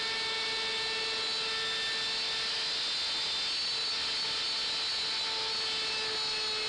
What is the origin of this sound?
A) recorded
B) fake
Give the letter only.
A